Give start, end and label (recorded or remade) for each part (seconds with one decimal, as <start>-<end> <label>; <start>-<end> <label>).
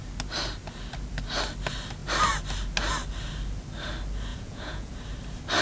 0.0-4.3 recorded; 4.3-4.9 remade; 4.9-5.6 recorded